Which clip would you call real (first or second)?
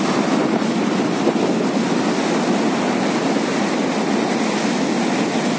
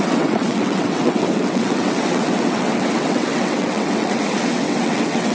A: first